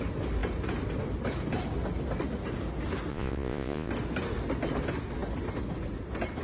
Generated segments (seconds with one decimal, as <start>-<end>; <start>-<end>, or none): 3.1-3.9